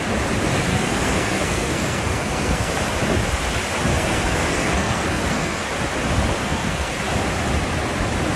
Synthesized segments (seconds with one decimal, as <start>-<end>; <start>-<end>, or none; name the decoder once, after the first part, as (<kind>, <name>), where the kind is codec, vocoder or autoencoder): 0.7-2.7 (codec, SNAC); 3.9-5.7; 6.4-6.9